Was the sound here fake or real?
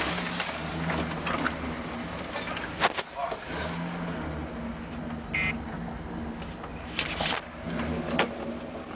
real